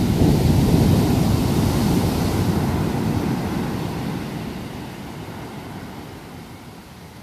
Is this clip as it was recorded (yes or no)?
yes